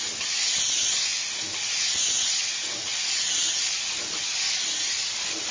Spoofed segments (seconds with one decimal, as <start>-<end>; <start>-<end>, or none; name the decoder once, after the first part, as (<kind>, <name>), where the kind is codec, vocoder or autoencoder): none